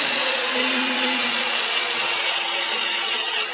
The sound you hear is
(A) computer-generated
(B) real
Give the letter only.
A